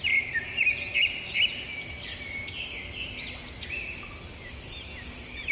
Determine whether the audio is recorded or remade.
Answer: recorded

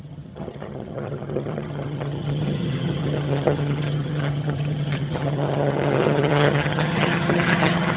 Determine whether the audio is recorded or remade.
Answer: remade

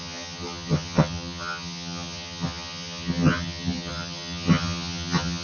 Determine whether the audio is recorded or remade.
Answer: remade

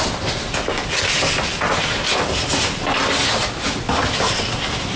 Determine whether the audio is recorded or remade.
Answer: recorded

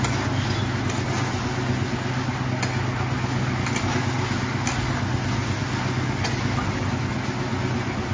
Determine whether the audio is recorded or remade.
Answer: recorded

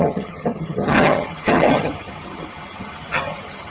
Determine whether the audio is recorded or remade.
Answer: remade